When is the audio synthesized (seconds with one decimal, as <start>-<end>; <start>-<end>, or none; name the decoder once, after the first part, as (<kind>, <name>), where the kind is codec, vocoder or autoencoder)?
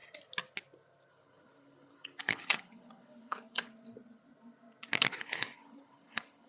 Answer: 1.1-3.7 (codec, HILCodec); 5.2-6.5